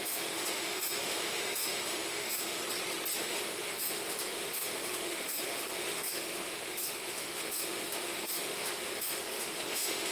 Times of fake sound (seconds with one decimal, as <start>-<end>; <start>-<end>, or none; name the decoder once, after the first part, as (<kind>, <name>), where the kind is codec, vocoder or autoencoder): 0.0-2.6 (autoencoder, DAC-VAE); 3.2-10.1